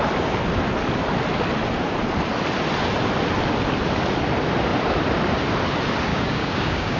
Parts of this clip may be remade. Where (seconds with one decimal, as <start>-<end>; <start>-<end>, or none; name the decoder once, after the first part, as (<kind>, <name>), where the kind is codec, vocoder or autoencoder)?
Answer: 6.1-7.0 (codec, DAC)